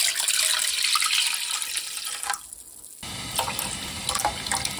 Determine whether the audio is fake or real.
real